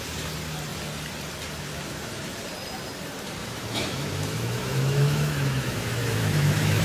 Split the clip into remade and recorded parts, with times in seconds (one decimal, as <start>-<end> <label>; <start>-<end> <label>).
0.0-3.4 recorded; 3.4-6.8 remade